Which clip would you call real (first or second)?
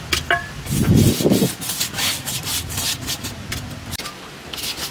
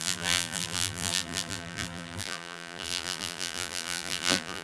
first